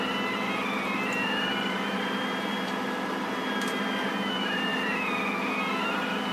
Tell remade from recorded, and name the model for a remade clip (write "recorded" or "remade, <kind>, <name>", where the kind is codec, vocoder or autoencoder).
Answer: recorded